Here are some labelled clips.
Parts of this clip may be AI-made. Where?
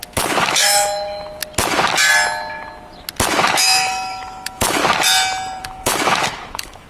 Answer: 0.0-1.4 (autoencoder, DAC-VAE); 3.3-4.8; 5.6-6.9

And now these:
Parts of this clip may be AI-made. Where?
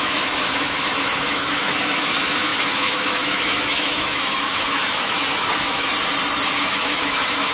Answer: 0.0-5.9 (autoencoder, DAC-VAE); 6.6-7.5